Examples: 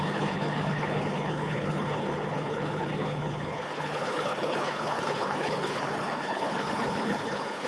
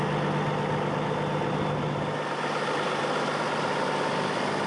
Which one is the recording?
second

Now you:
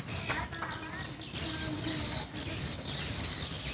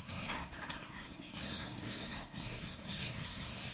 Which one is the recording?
first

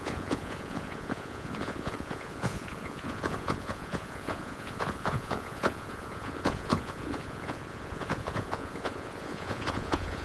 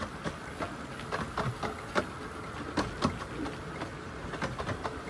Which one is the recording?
second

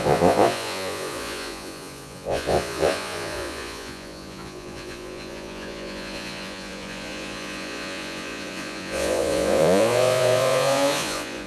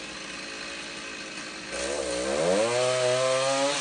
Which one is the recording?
second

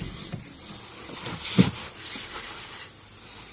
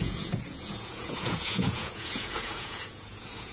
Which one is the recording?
first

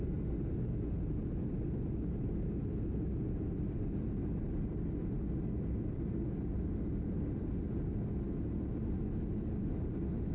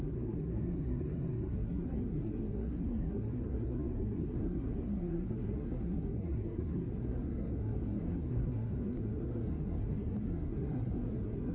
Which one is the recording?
first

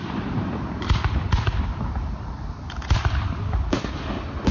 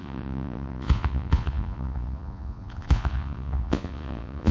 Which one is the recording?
first